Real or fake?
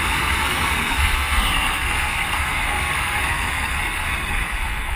fake